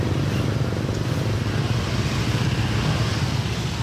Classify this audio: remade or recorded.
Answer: recorded